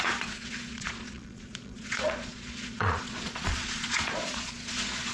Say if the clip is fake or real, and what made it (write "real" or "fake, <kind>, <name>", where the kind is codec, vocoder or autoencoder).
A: fake, vocoder, Vocos